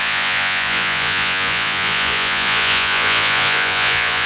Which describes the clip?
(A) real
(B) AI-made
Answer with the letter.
B